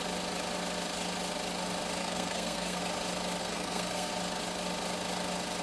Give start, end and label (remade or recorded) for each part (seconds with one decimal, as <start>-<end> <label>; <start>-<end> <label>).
0.0-2.0 recorded; 2.0-2.8 remade; 2.8-3.4 recorded; 3.4-4.1 remade; 4.1-5.6 recorded